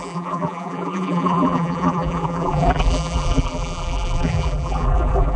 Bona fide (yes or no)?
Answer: no